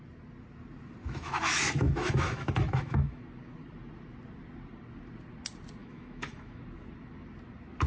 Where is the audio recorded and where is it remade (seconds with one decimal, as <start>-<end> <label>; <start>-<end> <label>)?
0.0-1.0 recorded; 1.0-3.2 remade; 3.2-5.8 recorded; 5.8-6.6 remade; 6.6-7.9 recorded